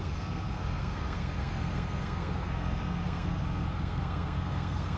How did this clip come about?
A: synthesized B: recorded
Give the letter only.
A